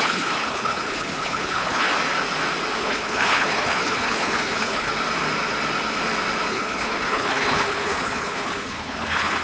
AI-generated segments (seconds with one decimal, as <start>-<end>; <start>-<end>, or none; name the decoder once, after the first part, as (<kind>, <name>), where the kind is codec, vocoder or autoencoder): 0.0-1.9 (codec, HILCodec); 2.8-4.9; 6.5-9.4